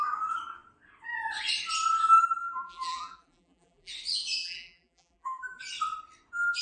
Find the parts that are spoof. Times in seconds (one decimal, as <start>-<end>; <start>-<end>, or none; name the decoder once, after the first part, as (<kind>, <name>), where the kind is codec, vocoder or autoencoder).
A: 2.4-3.9 (vocoder, BigVGAN v2); 4.4-5.6

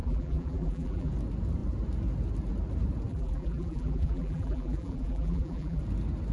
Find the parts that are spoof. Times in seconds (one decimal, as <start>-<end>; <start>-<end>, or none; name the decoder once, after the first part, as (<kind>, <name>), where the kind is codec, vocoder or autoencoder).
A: 0.0-1.1 (vocoder, BigVGAN v2); 3.1-5.8